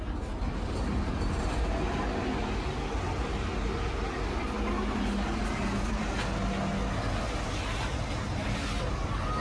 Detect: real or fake real